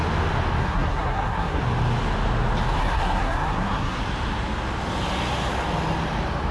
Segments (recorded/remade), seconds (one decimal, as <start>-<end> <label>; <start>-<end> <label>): 0.0-0.6 recorded; 0.6-1.6 remade; 1.6-2.8 recorded; 2.8-4.0 remade; 4.0-6.5 recorded